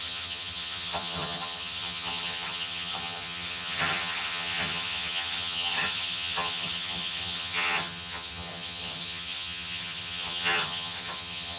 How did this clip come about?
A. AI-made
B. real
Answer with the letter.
A